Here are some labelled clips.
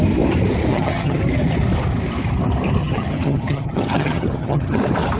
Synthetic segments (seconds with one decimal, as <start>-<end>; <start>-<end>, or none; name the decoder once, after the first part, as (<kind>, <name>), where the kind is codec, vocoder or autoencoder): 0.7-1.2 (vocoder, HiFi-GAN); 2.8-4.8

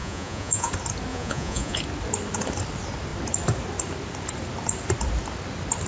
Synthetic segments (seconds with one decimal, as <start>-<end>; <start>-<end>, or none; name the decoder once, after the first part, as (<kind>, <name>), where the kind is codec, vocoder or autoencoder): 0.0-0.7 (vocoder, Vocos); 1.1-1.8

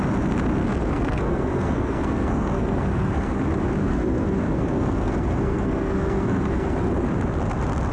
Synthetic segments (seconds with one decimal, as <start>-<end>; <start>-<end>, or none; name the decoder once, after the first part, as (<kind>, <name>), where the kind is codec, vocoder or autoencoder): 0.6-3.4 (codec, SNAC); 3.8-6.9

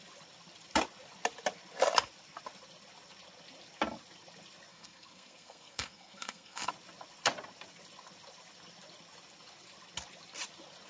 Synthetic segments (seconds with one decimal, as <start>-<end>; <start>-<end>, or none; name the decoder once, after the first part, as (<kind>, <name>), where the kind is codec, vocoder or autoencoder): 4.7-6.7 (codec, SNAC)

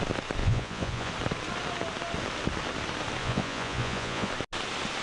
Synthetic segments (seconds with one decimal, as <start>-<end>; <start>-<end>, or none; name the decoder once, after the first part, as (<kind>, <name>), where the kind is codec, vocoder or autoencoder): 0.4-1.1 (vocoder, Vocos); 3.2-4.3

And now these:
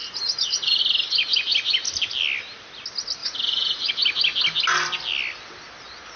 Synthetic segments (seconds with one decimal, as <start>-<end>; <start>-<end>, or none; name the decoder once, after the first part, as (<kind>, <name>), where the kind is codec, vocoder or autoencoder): 0.0-0.8 (vocoder, Vocos); 3.2-3.9

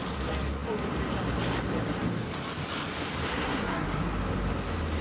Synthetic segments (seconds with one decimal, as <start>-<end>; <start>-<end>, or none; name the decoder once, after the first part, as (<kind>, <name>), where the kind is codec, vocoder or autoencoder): 3.3-4.0 (codec, SNAC)